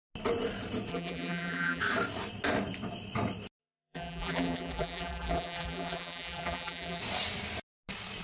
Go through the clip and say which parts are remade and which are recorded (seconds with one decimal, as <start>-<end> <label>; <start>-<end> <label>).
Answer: 0.0-0.9 recorded; 0.9-1.8 remade; 1.8-3.6 recorded; 3.6-7.0 remade; 7.0-8.2 recorded